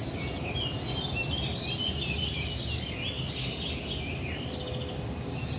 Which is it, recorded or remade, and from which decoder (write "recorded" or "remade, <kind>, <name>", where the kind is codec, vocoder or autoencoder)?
recorded